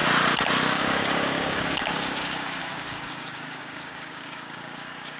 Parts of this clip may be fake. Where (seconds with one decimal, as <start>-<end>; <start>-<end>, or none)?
0.7-5.2